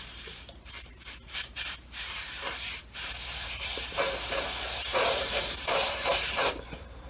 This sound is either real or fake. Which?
fake